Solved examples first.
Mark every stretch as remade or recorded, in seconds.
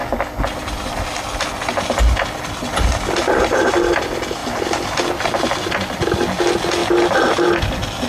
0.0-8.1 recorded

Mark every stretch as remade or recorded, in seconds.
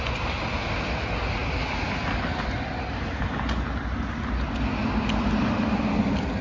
0.0-6.4 recorded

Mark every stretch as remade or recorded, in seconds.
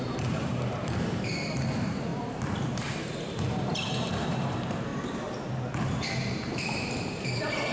0.0-2.1 remade; 2.1-2.7 recorded; 2.7-4.9 remade; 4.9-6.0 recorded; 6.0-7.7 remade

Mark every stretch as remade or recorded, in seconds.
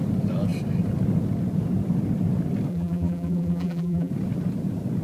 0.0-2.7 recorded; 2.7-4.1 remade; 4.1-5.0 recorded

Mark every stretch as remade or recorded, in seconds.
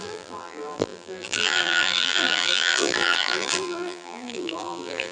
0.0-5.1 remade